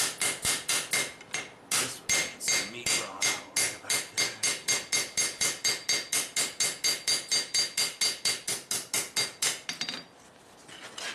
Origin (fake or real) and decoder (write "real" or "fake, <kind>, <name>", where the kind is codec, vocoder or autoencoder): real